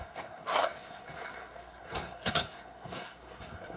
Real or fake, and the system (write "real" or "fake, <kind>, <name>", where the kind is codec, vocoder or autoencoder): fake, codec, SNAC